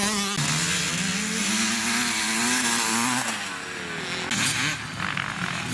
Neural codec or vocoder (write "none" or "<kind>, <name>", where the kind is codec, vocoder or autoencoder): none